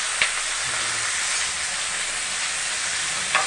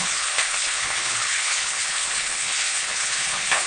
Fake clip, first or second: second